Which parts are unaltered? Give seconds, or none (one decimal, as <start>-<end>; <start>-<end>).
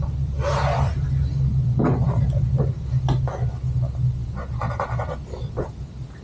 0.0-6.2